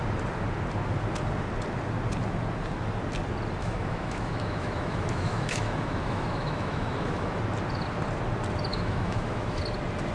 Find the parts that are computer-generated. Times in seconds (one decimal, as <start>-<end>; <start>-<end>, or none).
3.6-7.4; 8.7-9.6

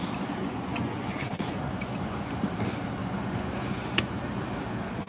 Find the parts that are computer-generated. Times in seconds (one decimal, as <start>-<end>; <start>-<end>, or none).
0.4-2.3; 3.0-4.2